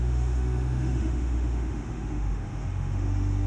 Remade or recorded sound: remade